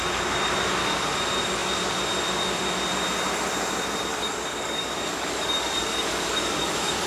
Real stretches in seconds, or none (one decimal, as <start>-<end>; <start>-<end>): 0.0-4.1